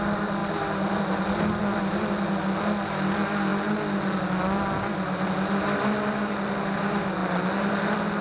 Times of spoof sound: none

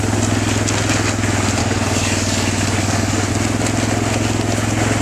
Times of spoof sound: 1.6-3.3 (codec, DAC)

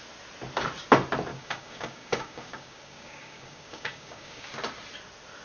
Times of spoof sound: 1.3-4.5 (codec, DAC)